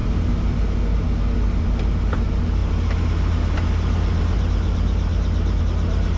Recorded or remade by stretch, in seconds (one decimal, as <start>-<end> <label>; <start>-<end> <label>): 0.0-6.2 recorded